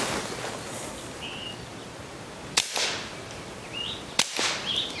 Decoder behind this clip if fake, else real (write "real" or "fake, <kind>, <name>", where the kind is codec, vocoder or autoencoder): real